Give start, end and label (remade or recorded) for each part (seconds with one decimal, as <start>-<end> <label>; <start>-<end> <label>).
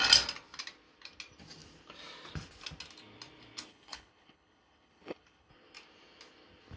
0.0-3.7 recorded; 3.7-5.5 remade; 5.5-6.8 recorded